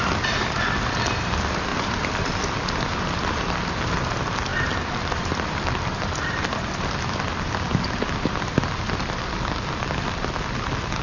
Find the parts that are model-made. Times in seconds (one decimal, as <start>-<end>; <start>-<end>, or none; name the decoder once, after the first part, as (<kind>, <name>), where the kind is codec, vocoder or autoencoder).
1.7-2.3 (vocoder, BigVGAN v2); 4.5-9.2